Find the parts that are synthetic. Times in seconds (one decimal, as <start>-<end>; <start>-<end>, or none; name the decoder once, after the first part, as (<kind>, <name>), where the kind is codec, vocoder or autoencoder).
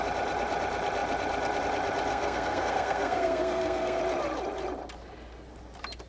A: 2.1-4.0 (codec, SNAC)